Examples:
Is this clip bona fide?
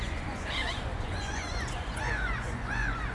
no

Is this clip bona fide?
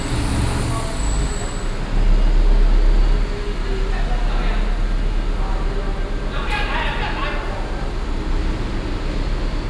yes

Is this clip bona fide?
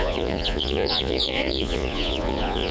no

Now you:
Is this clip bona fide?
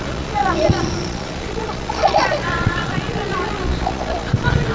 no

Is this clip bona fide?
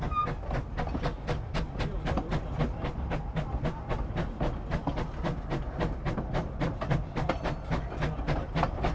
yes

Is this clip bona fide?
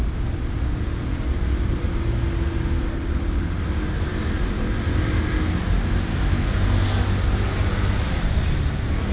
yes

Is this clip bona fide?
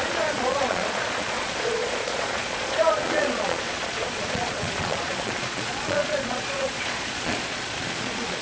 no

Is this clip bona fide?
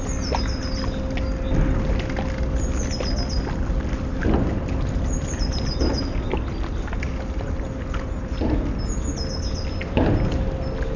yes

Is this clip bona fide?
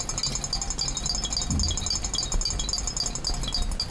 yes